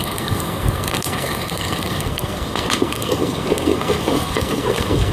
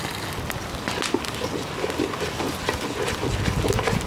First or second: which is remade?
first